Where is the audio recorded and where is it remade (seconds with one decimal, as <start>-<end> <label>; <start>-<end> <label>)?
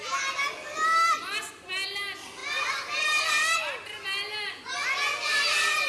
0.0-5.9 recorded